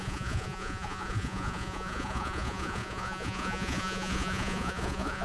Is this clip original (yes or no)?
no